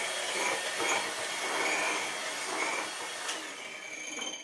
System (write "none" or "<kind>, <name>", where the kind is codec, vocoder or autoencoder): none